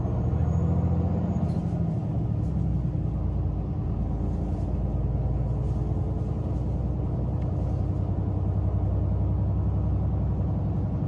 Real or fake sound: real